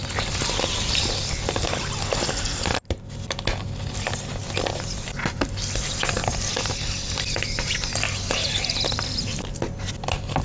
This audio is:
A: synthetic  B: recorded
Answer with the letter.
B